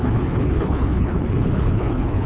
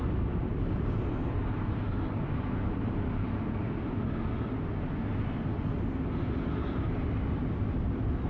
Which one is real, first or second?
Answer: second